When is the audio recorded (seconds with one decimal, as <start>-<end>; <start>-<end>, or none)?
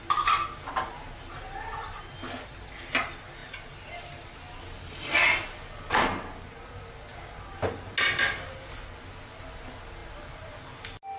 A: 0.0-11.2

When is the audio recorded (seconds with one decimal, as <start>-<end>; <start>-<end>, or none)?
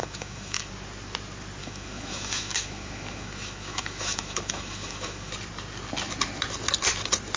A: 0.7-1.6; 5.3-7.4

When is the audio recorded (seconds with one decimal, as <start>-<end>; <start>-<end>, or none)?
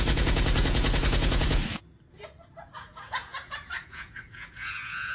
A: 1.6-2.6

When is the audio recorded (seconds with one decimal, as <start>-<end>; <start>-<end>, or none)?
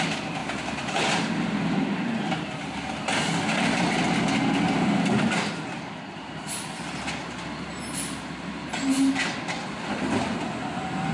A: 0.0-11.1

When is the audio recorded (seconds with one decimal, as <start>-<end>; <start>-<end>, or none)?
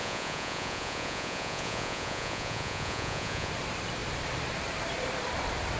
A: 3.5-5.8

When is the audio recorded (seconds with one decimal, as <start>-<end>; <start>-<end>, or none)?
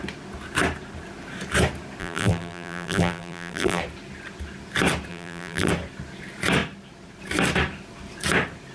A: 0.0-2.0; 3.8-5.1; 5.7-8.7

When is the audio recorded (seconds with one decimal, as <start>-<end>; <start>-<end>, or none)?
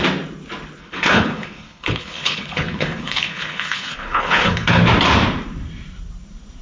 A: 0.0-0.8; 4.8-6.6